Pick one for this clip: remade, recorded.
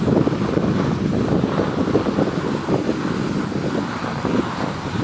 recorded